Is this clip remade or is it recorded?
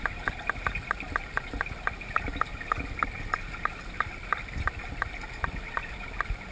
recorded